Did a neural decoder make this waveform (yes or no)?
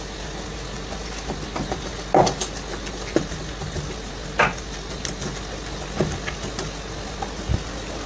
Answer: no